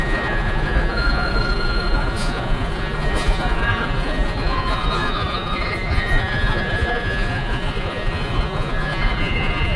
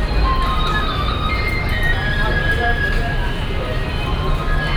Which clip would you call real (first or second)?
second